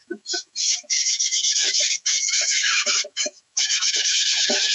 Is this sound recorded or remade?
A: remade